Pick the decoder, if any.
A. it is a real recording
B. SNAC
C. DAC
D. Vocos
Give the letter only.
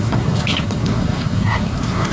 B